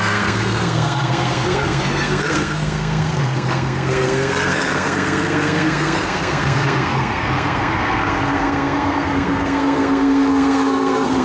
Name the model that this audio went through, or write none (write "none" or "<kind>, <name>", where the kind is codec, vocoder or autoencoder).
codec, SNAC